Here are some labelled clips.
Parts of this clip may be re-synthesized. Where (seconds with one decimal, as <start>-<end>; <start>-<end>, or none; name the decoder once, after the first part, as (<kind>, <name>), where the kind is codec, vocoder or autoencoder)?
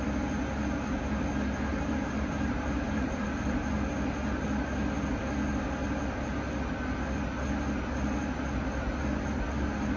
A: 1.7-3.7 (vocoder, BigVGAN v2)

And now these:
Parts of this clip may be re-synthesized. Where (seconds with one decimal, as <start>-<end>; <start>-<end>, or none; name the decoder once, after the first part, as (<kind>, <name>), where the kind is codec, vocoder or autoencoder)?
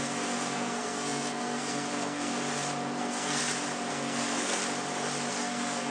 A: 0.0-2.3 (codec, SNAC); 3.0-3.4; 3.9-4.6; 5.3-5.9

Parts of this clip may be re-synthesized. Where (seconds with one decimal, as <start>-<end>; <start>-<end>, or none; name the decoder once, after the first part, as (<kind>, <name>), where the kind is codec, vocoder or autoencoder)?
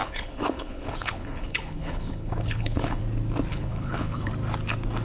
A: 0.0-3.0 (codec, HILCodec); 3.5-4.3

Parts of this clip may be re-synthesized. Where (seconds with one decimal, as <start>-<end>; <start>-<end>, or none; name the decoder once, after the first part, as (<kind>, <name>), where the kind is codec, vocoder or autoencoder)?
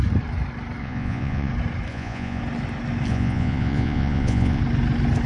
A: 0.8-1.5 (vocoder, Vocos); 1.9-2.4; 3.1-4.6